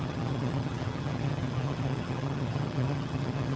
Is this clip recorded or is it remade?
remade